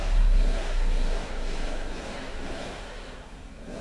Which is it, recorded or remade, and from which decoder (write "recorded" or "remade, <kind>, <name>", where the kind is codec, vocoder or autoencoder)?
remade, codec, SNAC